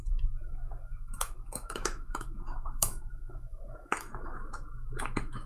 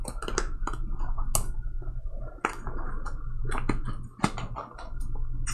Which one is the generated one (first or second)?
first